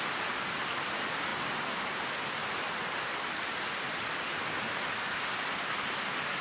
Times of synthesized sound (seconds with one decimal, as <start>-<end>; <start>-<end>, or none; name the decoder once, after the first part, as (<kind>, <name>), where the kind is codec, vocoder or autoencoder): none